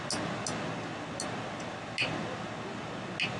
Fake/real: real